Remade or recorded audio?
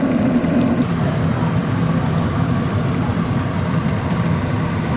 remade